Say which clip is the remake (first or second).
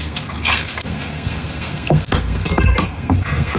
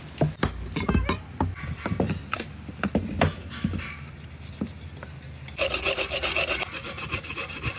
first